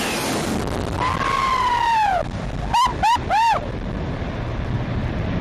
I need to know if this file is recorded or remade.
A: recorded